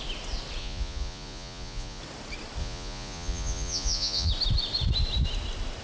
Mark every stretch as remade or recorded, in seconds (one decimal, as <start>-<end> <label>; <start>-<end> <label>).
0.0-0.6 recorded; 0.6-2.0 remade; 2.0-2.6 recorded; 2.6-4.3 remade; 4.3-5.8 recorded